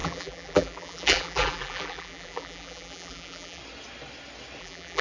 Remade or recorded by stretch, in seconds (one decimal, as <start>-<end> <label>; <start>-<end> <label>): 0.0-3.6 remade; 3.6-4.6 recorded; 4.6-5.0 remade